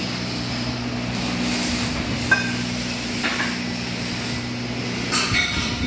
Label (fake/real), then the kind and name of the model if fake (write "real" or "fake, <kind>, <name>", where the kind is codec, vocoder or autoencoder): real